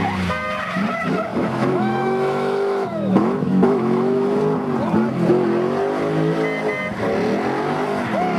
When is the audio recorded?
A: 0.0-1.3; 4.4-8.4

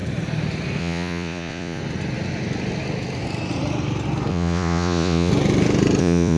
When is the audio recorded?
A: 0.0-0.8; 1.8-4.3; 5.3-6.0

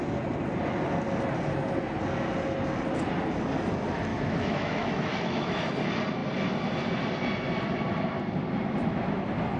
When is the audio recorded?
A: 0.0-4.1; 5.7-9.6

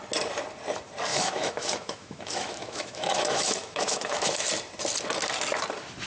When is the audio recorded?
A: 0.0-1.1; 4.5-6.1

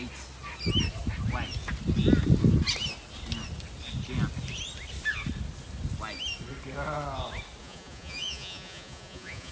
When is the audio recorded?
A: 0.0-7.6

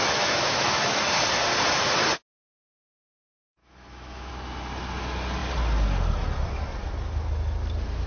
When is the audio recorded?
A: 1.0-3.6; 4.3-8.1

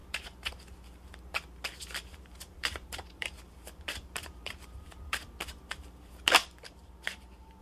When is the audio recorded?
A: 0.6-2.1; 5.3-6.4

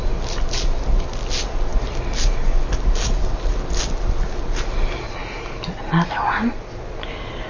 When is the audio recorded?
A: 0.0-7.5